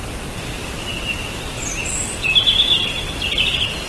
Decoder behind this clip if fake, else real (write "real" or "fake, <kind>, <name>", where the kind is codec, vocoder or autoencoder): real